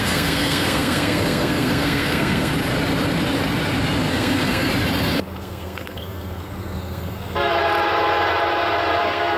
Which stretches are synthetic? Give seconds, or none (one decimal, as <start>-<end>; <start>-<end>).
0.0-2.5; 4.1-4.7; 5.2-7.5; 9.0-9.4